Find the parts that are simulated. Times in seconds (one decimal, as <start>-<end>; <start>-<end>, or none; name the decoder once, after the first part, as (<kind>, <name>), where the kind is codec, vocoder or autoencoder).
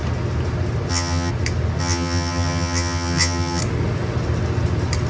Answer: 0.9-1.3 (vocoder, HiFi-GAN); 1.8-3.6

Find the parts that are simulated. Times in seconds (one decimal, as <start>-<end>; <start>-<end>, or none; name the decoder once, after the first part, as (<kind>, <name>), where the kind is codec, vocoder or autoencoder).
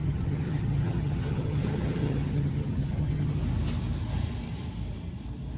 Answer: 0.0-3.4 (vocoder, HiFi-GAN)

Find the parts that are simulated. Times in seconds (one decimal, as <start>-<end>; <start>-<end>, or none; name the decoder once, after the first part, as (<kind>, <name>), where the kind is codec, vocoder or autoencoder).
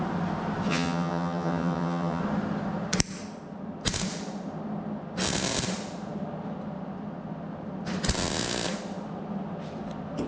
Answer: 0.7-2.2 (vocoder, HiFi-GAN)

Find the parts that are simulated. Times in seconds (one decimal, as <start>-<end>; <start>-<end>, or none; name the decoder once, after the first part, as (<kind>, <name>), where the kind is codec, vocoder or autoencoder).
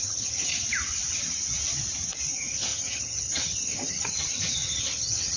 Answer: 0.0-0.5 (vocoder, HiFi-GAN); 2.3-5.4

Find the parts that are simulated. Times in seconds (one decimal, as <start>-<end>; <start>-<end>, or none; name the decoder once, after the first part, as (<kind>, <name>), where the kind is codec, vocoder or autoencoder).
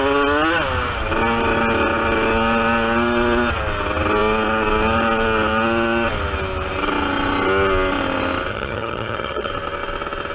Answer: 8.5-9.5 (vocoder, HiFi-GAN)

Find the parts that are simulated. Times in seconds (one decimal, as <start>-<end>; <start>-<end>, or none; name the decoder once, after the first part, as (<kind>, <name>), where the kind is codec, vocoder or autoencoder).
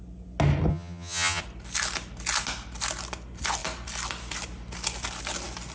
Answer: 0.7-1.4 (vocoder, HiFi-GAN)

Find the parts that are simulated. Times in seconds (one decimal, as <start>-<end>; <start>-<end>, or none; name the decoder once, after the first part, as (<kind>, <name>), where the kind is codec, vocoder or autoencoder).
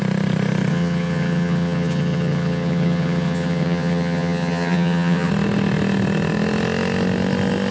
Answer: 0.7-5.3 (vocoder, HiFi-GAN)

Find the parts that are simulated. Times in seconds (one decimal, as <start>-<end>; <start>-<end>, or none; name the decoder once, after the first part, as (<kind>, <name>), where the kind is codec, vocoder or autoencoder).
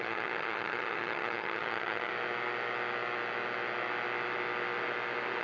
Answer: 0.0-2.1 (vocoder, HiFi-GAN)